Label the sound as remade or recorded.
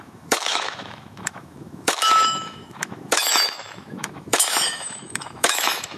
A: remade